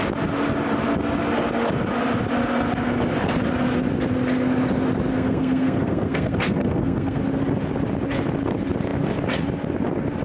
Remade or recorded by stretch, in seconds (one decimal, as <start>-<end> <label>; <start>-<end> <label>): 0.0-5.1 recorded; 5.1-7.2 remade; 7.2-10.2 recorded